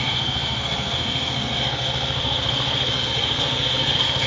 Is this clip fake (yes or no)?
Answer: yes